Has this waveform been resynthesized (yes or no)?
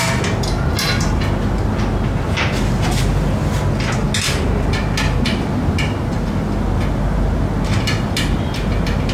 no